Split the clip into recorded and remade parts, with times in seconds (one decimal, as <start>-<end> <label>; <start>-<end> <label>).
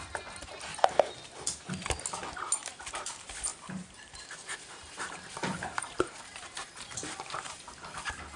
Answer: 0.0-3.5 recorded; 3.5-7.6 remade; 7.6-8.4 recorded